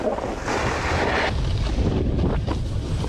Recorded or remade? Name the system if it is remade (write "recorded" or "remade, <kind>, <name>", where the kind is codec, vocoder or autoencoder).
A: recorded